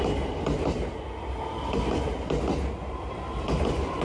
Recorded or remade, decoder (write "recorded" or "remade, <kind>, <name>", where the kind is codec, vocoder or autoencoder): recorded